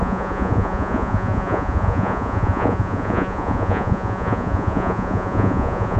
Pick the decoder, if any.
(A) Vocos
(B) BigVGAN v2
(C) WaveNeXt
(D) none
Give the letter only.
A